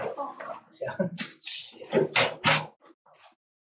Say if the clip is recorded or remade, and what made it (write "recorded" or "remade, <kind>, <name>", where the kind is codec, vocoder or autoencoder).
recorded